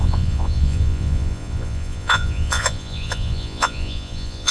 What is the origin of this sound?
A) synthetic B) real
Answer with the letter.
A